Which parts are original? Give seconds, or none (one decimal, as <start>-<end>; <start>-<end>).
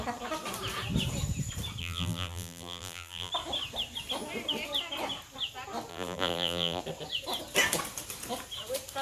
0.0-1.8; 3.3-5.9; 6.8-9.0